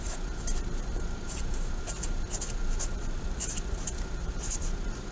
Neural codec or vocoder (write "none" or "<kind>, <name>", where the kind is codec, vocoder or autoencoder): vocoder, BigVGAN v2